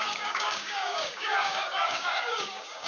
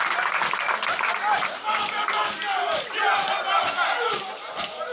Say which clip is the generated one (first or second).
first